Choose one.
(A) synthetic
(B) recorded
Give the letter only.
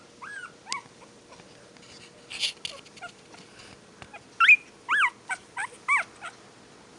B